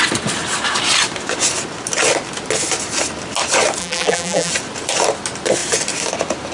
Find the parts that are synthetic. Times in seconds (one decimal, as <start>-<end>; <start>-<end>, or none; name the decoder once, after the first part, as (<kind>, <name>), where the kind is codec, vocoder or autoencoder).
3.8-4.5 (vocoder, BigVGAN v2)